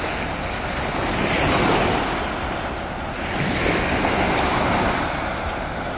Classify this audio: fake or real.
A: real